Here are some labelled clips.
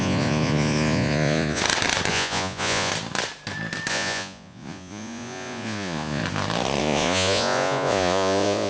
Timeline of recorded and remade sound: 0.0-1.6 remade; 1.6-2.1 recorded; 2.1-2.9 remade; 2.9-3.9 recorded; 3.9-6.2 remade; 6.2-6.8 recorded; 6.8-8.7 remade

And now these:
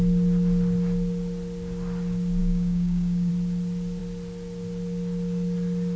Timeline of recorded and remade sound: 0.0-2.4 recorded; 2.4-3.3 remade; 3.3-6.0 recorded

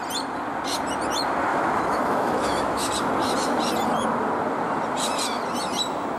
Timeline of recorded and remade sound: 0.0-1.5 recorded; 1.5-2.9 remade; 2.9-6.2 recorded

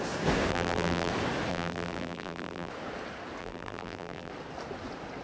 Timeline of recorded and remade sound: 0.0-0.5 recorded; 0.5-1.1 remade; 1.1-1.5 recorded; 1.5-2.7 remade; 2.7-3.4 recorded; 3.4-4.3 remade; 4.3-5.2 recorded

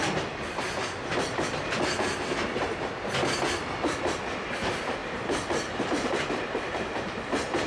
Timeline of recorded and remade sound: 0.0-5.0 recorded; 5.0-7.1 remade; 7.1-7.7 recorded

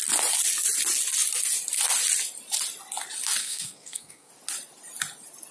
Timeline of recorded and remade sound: 0.0-3.4 recorded; 3.4-4.3 remade; 4.3-5.5 recorded

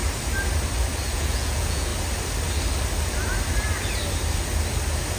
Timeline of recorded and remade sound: 0.0-1.1 recorded; 1.1-1.9 remade; 1.9-5.2 recorded